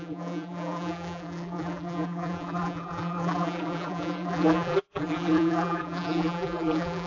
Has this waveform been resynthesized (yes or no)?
yes